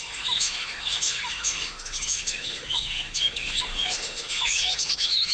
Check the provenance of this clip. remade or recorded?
remade